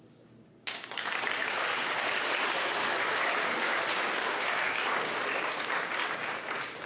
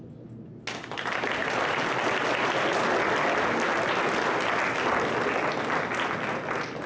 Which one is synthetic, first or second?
first